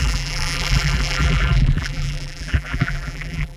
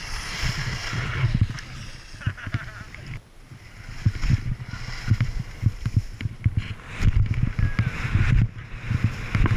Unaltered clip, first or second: second